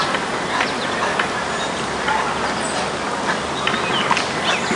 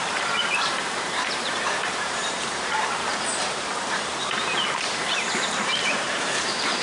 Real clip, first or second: first